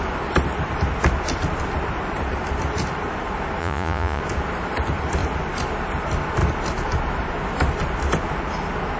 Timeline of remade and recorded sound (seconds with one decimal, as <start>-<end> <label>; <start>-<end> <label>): 0.0-3.6 recorded; 3.6-4.2 remade; 4.2-9.0 recorded

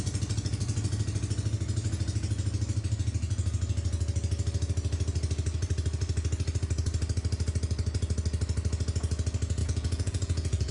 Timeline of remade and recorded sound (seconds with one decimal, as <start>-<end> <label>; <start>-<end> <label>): 0.0-9.6 recorded; 9.6-10.7 remade

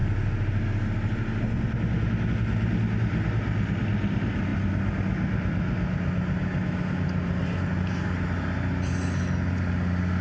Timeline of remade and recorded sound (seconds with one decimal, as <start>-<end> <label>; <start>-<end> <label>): 0.0-10.2 recorded

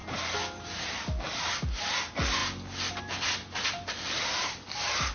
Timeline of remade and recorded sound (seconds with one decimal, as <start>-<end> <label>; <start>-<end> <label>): 0.0-5.1 recorded